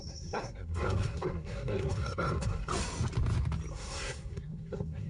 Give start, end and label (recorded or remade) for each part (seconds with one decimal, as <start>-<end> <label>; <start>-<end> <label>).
0.0-2.7 remade; 2.7-3.7 recorded; 3.7-5.1 remade